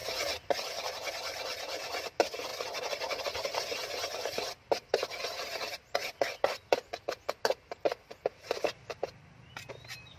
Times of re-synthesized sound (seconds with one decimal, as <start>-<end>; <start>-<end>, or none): none

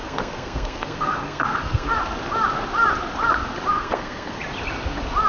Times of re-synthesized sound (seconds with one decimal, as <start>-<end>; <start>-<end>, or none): 0.0-1.9; 3.7-4.4

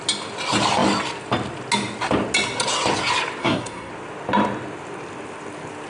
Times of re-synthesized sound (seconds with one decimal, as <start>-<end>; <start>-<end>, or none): 3.4-3.9

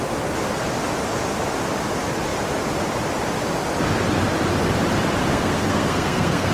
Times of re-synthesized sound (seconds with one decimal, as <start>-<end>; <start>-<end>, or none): 5.3-6.5